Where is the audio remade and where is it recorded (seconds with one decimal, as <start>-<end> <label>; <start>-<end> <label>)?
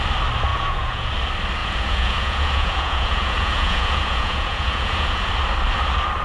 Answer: 0.0-0.5 recorded; 0.5-1.1 remade; 1.1-1.6 recorded; 1.6-5.3 remade; 5.3-6.2 recorded